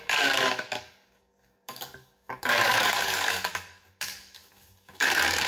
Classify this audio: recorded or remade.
remade